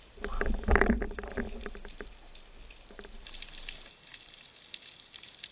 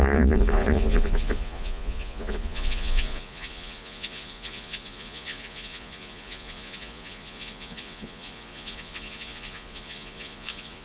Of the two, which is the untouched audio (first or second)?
first